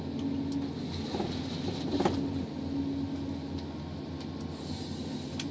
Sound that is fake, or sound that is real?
real